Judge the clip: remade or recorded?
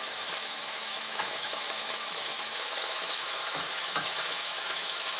remade